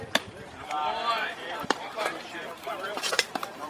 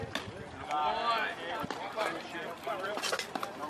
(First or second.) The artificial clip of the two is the first